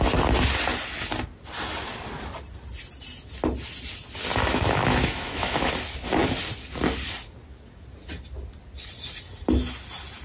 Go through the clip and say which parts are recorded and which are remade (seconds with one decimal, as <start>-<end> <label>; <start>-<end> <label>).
0.0-4.4 recorded; 4.4-5.7 remade; 5.7-10.2 recorded